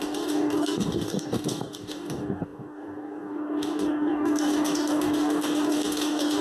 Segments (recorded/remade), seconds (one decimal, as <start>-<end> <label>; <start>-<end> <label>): 0.0-6.4 remade

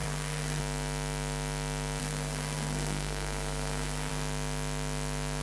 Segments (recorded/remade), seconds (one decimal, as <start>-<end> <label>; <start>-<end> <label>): 0.0-0.6 remade; 0.6-2.0 recorded; 2.0-4.1 remade; 4.1-5.4 recorded

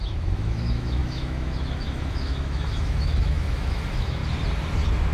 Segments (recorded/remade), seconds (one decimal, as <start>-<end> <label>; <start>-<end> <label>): 0.0-4.2 remade; 4.2-5.1 recorded

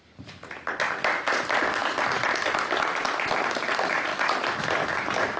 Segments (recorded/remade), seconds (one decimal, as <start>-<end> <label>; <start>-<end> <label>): 0.0-5.4 recorded